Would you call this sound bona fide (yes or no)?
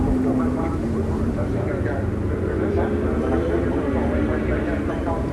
no